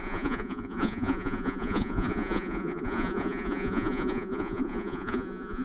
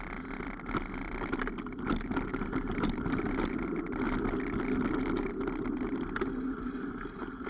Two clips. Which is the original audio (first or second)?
second